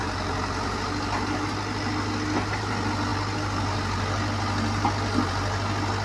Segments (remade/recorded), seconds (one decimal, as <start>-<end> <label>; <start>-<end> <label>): 0.0-6.0 recorded